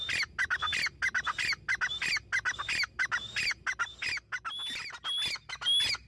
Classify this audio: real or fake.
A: real